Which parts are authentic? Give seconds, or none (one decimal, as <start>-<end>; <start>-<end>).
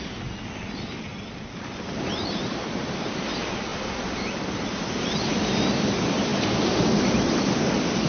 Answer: 0.0-8.1